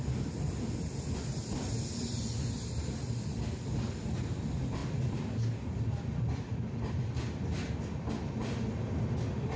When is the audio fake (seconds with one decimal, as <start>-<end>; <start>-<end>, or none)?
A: none